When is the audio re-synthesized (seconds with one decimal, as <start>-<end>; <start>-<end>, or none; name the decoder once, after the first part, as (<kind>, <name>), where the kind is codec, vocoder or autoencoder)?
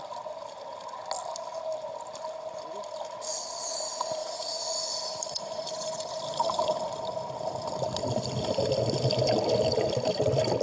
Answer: 4.2-7.7 (vocoder, BigVGAN v2)